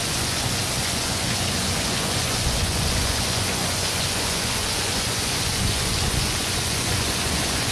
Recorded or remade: remade